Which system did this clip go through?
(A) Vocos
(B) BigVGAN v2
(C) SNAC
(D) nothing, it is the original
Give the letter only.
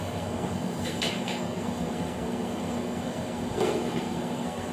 C